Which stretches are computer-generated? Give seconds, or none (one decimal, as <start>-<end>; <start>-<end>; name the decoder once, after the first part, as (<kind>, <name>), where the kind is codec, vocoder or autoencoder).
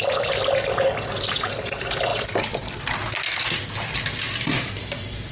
none